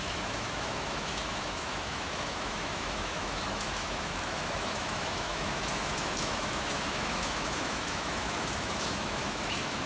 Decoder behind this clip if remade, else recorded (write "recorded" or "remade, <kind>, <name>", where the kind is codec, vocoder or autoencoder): remade, autoencoder, DAC-VAE